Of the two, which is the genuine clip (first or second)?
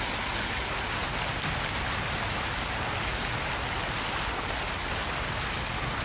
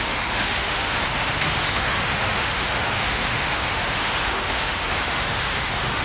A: first